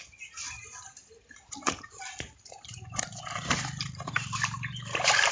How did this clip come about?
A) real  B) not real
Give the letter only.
B